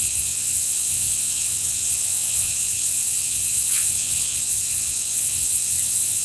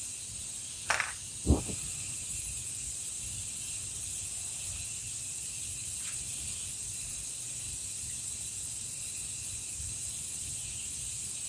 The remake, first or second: first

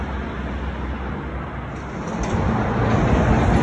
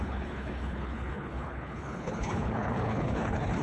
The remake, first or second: second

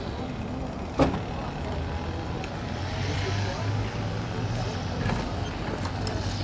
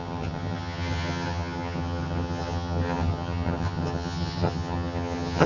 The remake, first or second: second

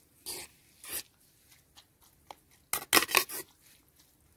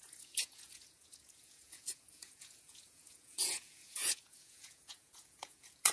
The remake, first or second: second